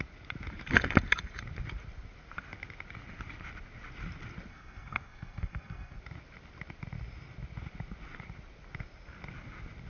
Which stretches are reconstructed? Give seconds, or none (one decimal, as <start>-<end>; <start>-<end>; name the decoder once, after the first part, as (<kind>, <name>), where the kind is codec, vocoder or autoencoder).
4.5-6.0 (codec, SNAC)